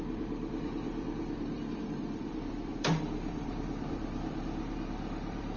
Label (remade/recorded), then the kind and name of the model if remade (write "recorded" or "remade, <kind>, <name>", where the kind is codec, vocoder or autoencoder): remade, vocoder, BigVGAN v2